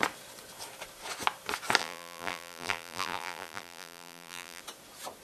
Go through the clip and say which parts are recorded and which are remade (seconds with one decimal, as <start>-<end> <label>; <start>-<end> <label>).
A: 0.0-1.8 recorded; 1.8-4.6 remade; 4.6-5.2 recorded